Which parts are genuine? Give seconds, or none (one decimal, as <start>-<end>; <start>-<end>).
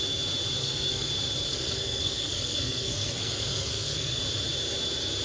0.0-0.6; 1.1-1.5; 4.2-5.2